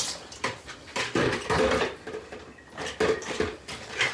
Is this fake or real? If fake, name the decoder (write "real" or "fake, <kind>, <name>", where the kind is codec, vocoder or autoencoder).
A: fake, vocoder, BigVGAN v2